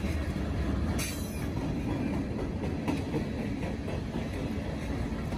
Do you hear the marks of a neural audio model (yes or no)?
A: no